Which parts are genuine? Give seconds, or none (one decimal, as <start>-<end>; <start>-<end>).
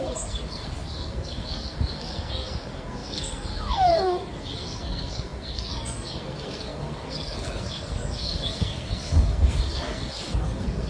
none